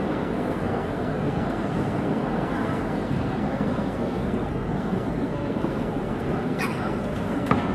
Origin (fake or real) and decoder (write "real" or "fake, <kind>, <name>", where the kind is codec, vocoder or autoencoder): fake, codec, SNAC